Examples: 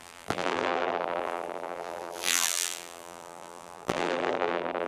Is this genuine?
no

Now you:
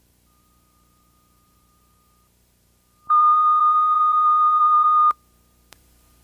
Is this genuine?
no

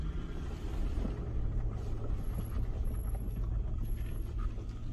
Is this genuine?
yes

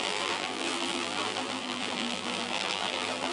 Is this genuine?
no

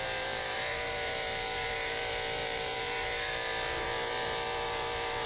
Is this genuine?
no